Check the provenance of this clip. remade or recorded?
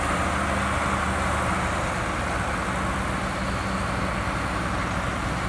recorded